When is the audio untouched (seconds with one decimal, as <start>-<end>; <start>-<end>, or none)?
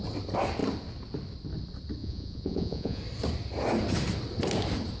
0.0-2.0; 3.0-5.0